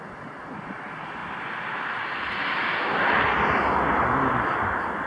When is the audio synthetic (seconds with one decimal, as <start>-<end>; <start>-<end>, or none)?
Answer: none